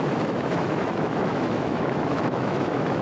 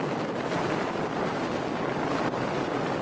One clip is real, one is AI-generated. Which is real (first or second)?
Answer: second